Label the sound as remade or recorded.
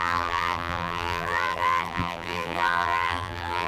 remade